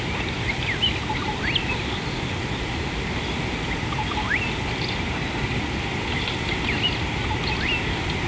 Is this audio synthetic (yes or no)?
no